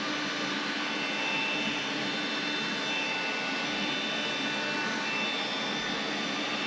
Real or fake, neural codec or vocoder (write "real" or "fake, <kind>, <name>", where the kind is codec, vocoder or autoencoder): real